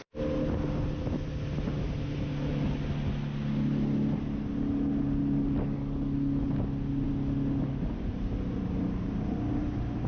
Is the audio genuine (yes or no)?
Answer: yes